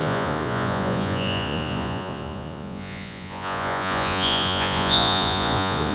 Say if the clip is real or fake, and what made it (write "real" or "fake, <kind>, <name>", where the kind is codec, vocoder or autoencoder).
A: fake, vocoder, Vocos